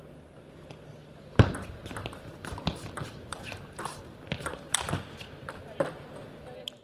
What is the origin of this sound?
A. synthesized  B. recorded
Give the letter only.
A